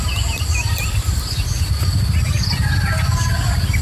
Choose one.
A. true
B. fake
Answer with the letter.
A